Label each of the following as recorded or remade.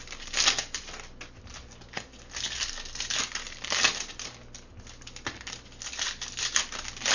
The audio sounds recorded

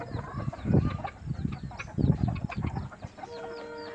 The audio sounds recorded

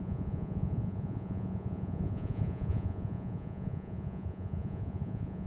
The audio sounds remade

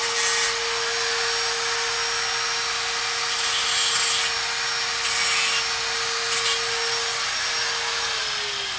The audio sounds recorded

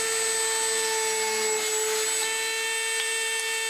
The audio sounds recorded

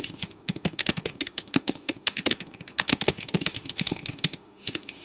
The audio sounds remade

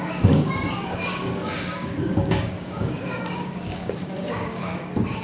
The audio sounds remade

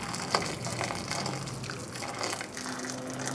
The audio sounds recorded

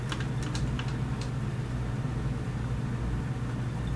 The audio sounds recorded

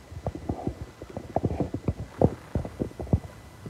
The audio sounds recorded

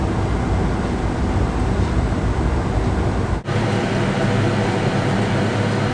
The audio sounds recorded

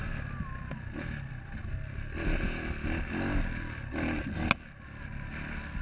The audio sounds recorded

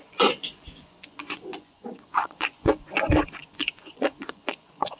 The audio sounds remade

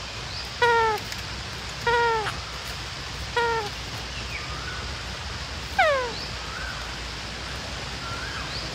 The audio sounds recorded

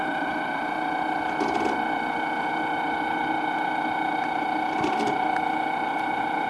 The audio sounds recorded